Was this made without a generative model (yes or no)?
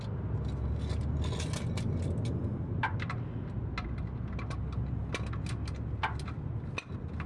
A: yes